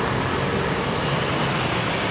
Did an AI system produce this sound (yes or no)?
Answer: no